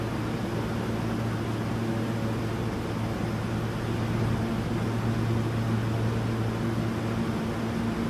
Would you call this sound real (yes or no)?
yes